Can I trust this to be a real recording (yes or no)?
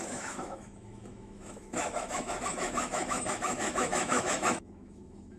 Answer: no